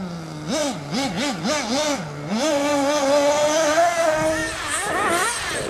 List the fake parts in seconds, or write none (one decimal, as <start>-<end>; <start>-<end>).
none